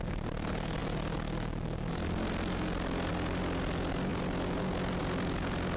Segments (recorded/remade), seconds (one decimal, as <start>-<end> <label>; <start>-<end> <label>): 0.0-5.8 recorded